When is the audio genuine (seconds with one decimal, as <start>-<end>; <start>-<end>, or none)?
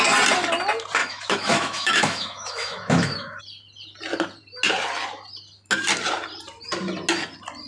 0.0-1.0; 3.4-7.7